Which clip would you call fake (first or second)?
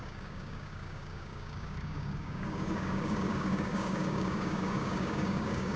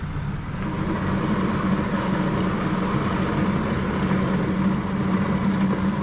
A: first